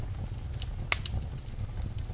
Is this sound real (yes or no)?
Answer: yes